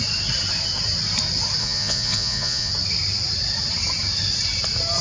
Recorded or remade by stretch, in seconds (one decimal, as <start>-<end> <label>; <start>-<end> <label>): 0.0-1.6 recorded; 1.6-2.7 remade; 2.7-5.0 recorded